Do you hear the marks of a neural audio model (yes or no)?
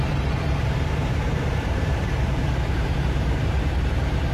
yes